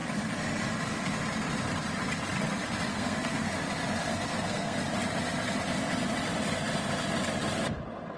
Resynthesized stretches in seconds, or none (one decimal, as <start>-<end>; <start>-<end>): 2.9-3.5; 4.1-4.8